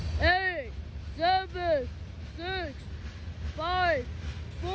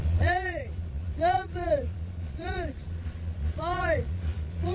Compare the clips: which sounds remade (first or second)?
second